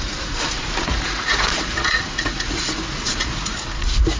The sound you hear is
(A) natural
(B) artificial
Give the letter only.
B